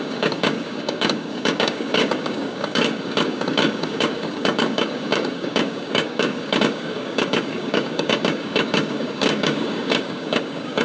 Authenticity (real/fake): fake